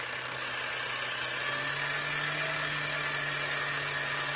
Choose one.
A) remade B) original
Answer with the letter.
B